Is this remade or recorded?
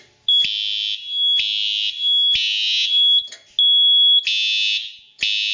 recorded